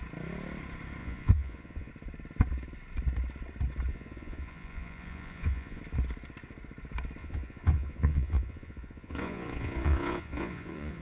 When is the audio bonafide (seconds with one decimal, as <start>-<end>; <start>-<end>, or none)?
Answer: 0.0-1.0; 1.9-3.9; 5.8-7.2